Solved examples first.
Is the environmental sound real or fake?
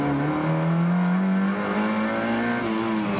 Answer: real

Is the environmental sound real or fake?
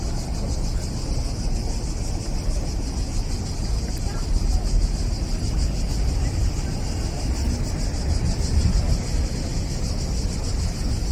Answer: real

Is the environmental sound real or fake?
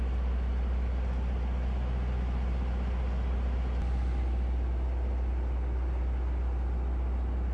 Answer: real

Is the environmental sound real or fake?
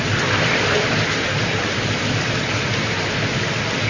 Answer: real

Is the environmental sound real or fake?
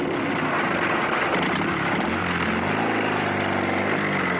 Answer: real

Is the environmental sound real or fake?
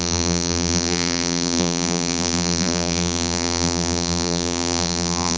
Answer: fake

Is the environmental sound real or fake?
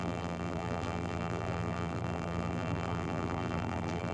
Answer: fake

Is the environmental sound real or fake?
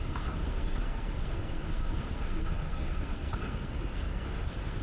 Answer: fake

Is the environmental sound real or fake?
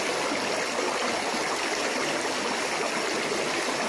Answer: real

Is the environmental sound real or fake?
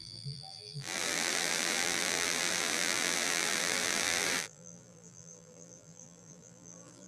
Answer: fake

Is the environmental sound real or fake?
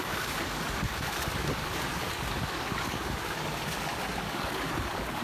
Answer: fake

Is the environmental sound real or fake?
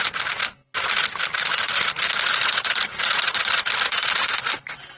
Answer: real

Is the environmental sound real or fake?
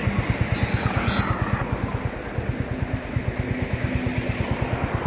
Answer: real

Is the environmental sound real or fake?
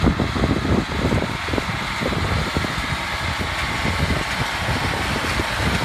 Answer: real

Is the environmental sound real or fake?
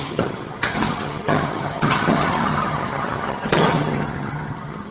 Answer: fake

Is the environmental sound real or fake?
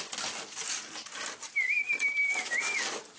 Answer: real